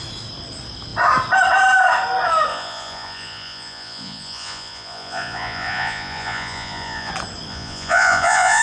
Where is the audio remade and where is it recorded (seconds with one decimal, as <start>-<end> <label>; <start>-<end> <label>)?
0.0-2.5 recorded; 2.5-7.1 remade; 7.1-7.5 recorded; 7.5-8.6 remade